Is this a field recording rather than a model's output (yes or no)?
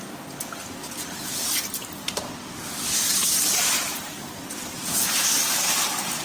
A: yes